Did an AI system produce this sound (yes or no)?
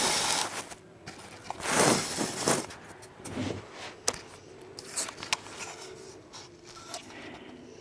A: no